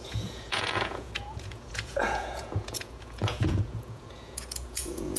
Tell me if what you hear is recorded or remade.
remade